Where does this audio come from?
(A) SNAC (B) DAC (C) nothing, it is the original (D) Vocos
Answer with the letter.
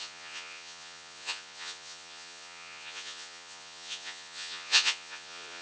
D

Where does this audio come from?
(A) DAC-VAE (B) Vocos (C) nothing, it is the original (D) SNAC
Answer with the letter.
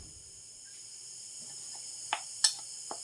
C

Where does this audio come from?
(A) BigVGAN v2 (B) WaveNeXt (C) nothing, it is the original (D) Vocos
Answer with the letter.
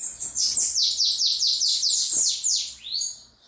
C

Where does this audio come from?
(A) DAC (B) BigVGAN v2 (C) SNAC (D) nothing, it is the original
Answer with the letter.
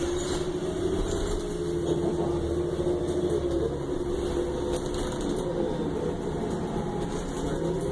D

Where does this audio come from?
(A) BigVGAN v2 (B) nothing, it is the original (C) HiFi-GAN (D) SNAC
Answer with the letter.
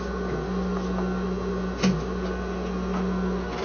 B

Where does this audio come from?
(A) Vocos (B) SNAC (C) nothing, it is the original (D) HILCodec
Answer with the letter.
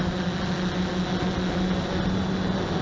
C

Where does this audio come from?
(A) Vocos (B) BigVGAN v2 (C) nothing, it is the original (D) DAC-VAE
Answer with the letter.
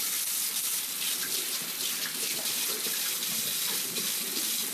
C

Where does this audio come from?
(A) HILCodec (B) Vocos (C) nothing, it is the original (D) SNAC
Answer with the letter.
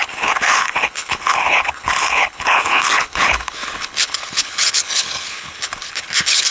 A